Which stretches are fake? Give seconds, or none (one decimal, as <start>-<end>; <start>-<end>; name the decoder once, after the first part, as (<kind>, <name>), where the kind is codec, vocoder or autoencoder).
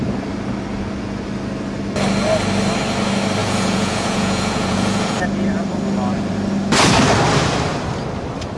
3.4-5.1 (vocoder, Vocos)